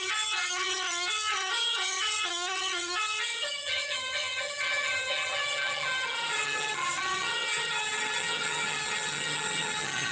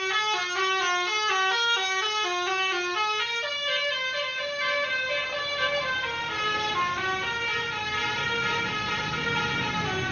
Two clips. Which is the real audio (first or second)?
second